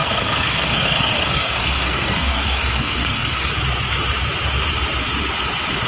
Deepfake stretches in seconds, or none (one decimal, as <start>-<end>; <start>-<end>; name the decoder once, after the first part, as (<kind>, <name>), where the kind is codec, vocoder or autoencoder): 0.0-3.5 (codec, SNAC)